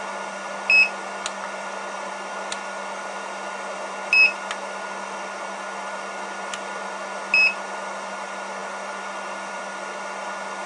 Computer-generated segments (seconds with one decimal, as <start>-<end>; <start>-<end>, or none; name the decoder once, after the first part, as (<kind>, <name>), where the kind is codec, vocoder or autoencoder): none